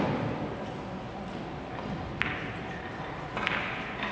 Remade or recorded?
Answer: recorded